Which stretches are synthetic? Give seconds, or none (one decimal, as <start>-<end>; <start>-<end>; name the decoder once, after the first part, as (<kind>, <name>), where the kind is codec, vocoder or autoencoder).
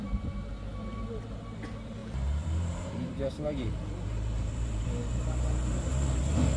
2.0-5.9 (vocoder, BigVGAN v2)